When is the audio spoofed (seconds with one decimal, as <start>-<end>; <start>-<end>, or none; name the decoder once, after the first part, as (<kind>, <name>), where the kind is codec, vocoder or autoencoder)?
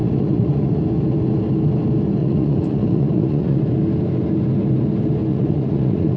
0.0-0.8 (vocoder, Vocos); 2.2-3.6; 5.3-6.2